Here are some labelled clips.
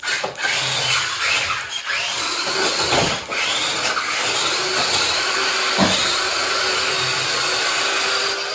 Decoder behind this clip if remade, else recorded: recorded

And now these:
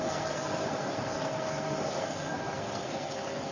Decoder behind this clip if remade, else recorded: remade, codec, SNAC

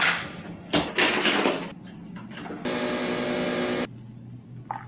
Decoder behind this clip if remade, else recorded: recorded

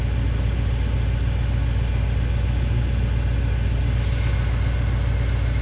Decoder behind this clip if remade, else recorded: recorded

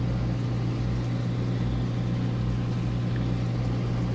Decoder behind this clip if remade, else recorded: recorded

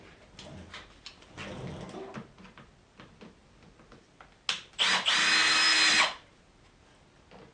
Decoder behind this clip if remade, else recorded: recorded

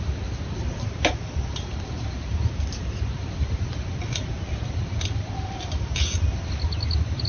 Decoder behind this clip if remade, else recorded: recorded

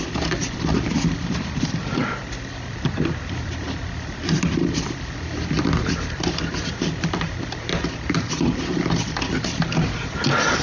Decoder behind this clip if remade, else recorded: remade, vocoder, BigVGAN v2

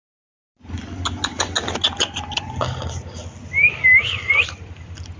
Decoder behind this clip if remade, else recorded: recorded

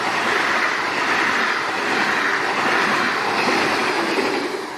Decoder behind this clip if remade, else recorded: recorded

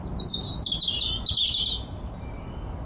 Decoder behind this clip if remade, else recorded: recorded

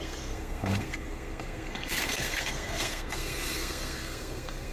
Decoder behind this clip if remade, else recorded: remade, codec, SNAC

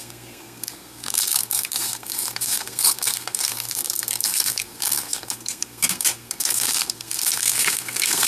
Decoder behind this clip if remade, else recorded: remade, codec, SNAC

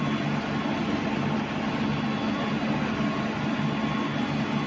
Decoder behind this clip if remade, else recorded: recorded